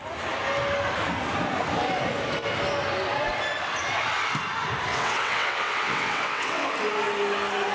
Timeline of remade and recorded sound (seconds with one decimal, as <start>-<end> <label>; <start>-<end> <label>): 0.0-4.9 recorded; 4.9-6.7 remade; 6.7-7.7 recorded